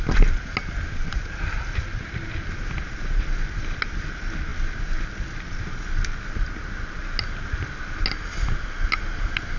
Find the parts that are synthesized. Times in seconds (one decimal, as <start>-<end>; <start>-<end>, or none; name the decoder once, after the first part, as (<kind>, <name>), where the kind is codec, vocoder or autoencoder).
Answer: none